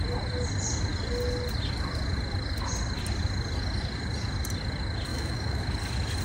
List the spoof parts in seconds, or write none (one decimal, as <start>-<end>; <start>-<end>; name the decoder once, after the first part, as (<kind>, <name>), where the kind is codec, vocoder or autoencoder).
5.1-5.6 (autoencoder, DAC-VAE)